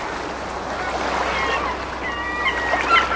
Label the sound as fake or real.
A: real